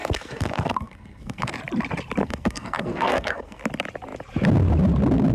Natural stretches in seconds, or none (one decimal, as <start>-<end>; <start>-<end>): 1.5-2.2; 3.6-5.3